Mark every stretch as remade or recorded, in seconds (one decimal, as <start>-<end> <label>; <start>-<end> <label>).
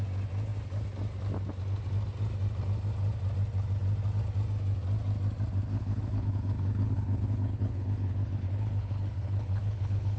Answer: 0.0-5.7 recorded; 5.7-10.2 remade